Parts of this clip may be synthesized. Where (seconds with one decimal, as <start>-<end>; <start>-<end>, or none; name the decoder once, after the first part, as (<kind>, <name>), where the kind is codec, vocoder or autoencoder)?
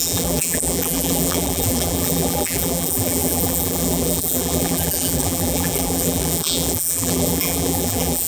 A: 0.0-8.3 (vocoder, BigVGAN v2)